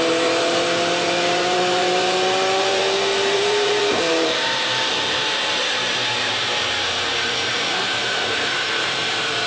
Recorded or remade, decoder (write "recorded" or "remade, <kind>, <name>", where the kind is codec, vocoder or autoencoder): remade, vocoder, BigVGAN v2